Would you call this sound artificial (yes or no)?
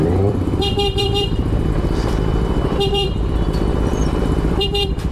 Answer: yes